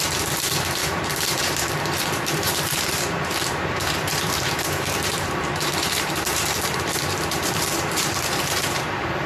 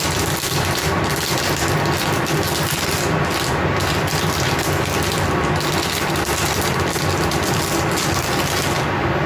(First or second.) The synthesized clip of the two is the first